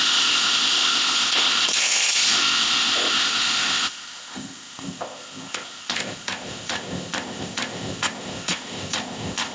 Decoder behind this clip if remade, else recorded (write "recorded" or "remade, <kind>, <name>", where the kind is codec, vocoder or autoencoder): remade, codec, ZipCodec